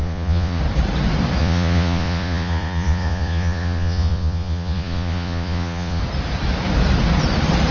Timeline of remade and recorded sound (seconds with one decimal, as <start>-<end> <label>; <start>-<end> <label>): 0.0-0.6 remade; 0.6-1.4 recorded; 1.4-6.0 remade; 6.0-7.7 recorded